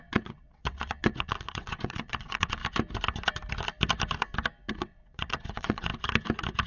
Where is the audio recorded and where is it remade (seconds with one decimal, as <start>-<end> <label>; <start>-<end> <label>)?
0.0-2.6 remade; 2.6-4.7 recorded; 4.7-5.9 remade; 5.9-6.7 recorded

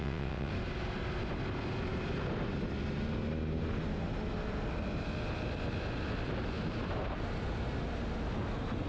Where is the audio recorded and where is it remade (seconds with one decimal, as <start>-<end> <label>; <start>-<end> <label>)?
0.0-0.5 remade; 0.5-8.9 recorded